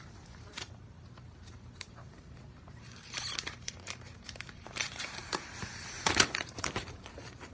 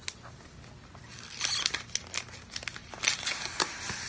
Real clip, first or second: second